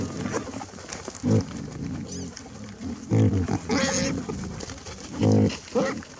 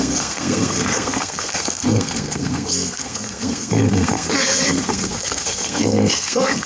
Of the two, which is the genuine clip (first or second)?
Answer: first